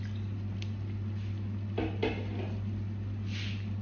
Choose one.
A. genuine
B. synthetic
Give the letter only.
A